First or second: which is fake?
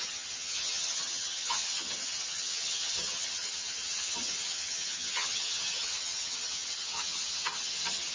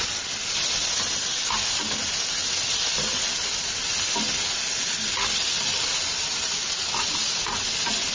first